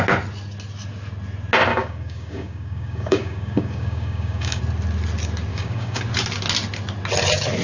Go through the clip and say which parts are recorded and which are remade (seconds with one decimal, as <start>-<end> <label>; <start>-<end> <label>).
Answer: 0.0-1.7 recorded; 1.7-4.6 remade; 4.6-5.5 recorded; 5.5-6.0 remade; 6.0-7.6 recorded